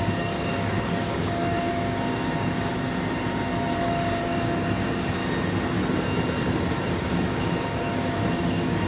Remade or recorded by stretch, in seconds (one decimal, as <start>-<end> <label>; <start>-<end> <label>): 0.0-2.7 remade; 2.7-3.8 recorded; 3.8-5.2 remade; 5.2-6.9 recorded; 6.9-8.9 remade

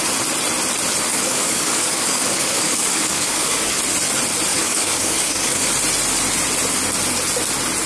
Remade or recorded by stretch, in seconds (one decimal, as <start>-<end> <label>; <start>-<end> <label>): 0.0-1.1 recorded; 1.1-3.8 remade; 3.8-4.5 recorded; 4.5-5.7 remade; 5.7-7.9 recorded